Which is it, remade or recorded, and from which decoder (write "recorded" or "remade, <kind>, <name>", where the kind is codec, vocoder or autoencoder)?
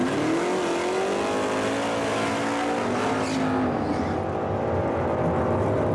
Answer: recorded